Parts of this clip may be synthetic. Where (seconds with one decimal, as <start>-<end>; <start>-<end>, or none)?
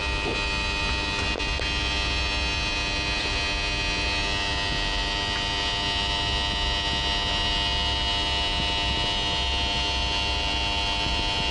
none